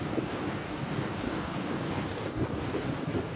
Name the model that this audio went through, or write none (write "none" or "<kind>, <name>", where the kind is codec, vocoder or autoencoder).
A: codec, DAC